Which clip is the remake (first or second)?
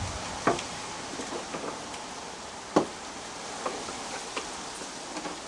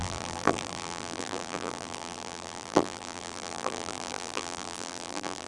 second